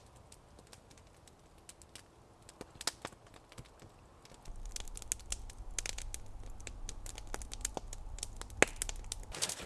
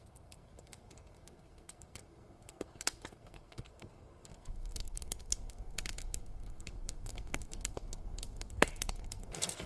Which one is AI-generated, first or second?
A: second